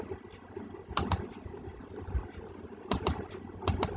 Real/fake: real